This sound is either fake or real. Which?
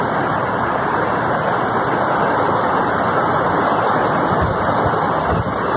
real